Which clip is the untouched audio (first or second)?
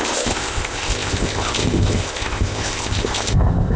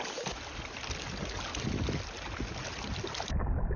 second